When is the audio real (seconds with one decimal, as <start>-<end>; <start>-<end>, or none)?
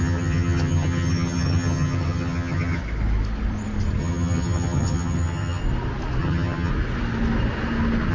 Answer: 2.8-4.0; 5.6-6.2; 6.7-8.1